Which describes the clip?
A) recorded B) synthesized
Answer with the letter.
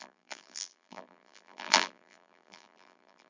B